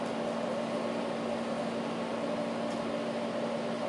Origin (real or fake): real